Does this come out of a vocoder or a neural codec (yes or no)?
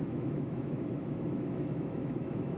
yes